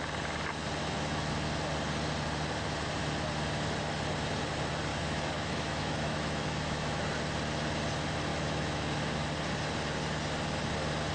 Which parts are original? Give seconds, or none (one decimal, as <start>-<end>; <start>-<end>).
0.0-0.8; 1.3-4.9; 7.0-8.3; 9.0-11.1